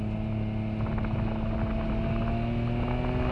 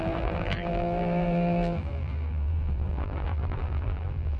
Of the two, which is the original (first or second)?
first